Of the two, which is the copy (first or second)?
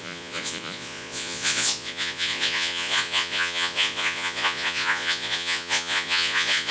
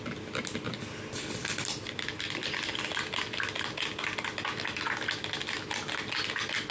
first